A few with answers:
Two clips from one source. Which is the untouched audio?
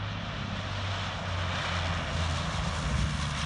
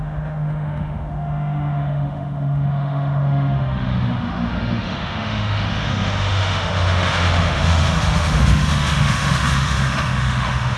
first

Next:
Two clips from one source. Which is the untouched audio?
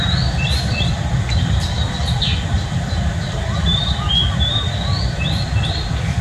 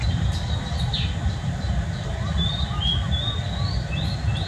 second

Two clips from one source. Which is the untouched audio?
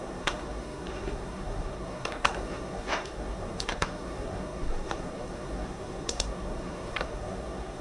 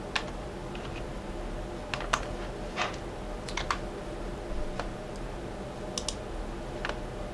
second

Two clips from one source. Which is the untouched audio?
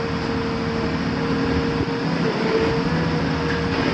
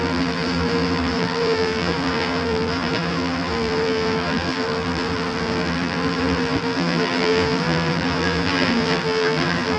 first